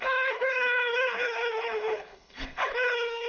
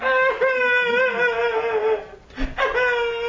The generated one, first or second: first